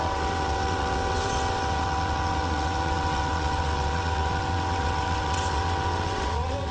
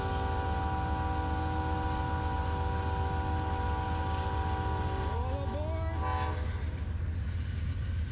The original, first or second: second